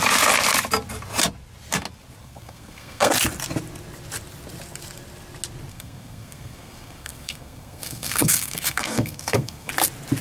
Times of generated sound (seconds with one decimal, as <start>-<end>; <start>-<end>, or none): 2.2-3.1; 5.7-9.7